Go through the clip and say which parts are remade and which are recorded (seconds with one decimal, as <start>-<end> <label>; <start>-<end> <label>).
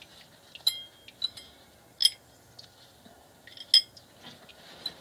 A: 0.0-5.0 recorded